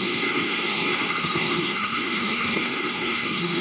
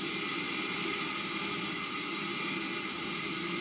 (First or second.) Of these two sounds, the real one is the second